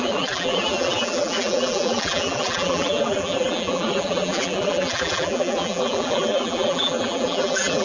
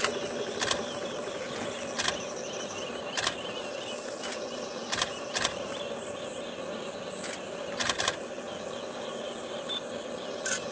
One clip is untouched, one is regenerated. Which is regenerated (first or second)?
first